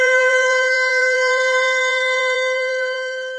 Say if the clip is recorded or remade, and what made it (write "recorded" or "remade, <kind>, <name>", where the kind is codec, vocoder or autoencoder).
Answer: remade, vocoder, BigVGAN v2